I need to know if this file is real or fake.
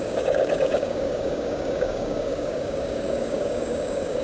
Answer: fake